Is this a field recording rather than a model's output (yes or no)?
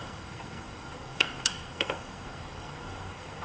no